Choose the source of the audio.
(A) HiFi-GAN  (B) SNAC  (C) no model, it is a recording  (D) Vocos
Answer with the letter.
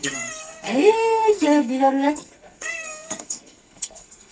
B